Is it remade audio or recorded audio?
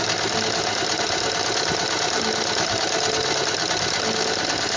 recorded